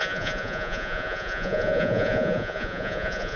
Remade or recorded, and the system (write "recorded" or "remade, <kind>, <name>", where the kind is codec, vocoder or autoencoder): remade, vocoder, Vocos